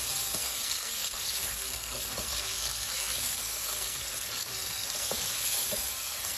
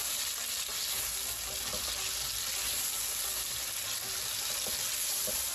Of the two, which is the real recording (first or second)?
second